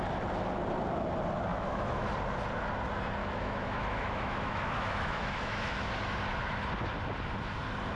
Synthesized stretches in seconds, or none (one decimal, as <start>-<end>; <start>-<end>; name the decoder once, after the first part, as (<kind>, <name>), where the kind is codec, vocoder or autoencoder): 1.5-2.1 (autoencoder, DAC-VAE); 3.2-5.9